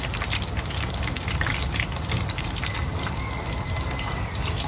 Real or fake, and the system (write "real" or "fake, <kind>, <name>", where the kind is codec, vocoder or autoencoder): real